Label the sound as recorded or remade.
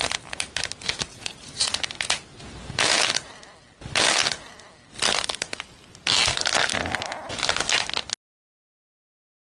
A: recorded